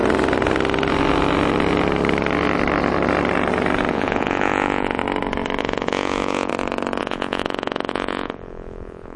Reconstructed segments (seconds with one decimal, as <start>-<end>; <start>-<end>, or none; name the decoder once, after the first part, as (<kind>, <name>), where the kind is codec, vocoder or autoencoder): 3.9-5.0 (vocoder, Vocos); 5.6-6.5; 7.0-9.2